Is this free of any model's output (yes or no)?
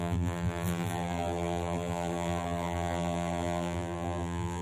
no